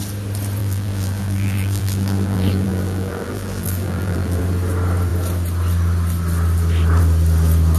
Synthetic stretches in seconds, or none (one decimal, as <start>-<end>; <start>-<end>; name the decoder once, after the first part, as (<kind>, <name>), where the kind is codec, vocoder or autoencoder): 0.6-4.4 (vocoder, BigVGAN v2)

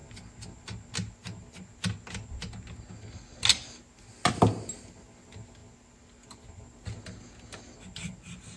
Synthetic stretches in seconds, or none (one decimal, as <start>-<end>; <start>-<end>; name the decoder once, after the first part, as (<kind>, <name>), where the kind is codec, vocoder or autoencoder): none